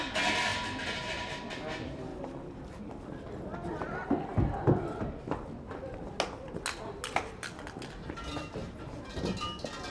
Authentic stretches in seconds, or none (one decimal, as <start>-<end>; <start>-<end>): 0.0-0.5; 1.3-2.1; 2.8-8.6; 9.2-9.9